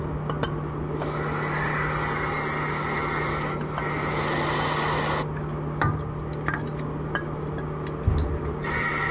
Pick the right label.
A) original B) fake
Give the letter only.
A